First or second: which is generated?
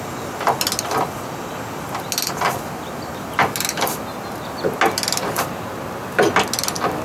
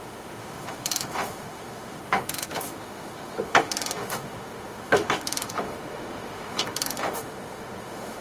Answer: second